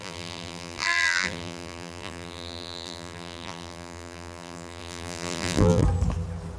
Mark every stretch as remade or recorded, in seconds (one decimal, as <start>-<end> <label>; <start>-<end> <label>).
0.0-5.8 remade; 5.8-6.6 recorded